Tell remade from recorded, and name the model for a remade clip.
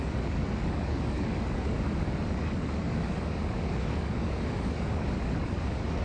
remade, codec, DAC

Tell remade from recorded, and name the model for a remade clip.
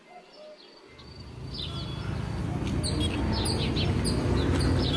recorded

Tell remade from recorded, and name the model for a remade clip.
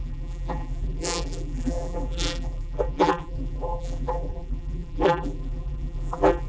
remade, vocoder, BigVGAN v2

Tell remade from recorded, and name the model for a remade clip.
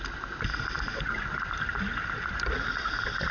recorded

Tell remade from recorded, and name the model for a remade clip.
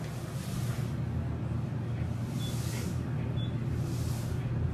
recorded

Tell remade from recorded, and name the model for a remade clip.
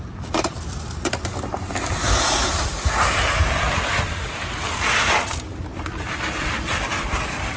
recorded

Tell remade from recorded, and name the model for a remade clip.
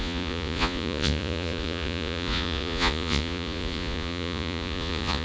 remade, vocoder, Vocos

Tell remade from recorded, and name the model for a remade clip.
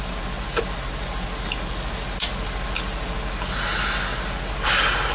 recorded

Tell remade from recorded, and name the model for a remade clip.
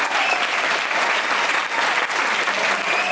recorded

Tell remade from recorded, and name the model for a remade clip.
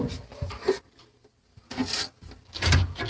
recorded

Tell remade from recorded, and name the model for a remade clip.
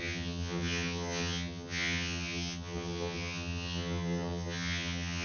remade, vocoder, HiFi-GAN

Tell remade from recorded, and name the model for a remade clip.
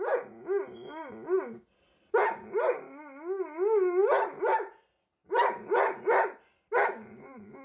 recorded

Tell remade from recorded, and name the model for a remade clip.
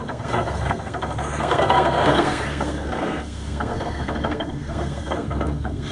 remade, codec, SNAC